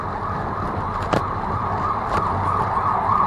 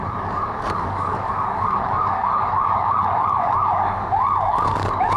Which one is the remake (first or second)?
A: second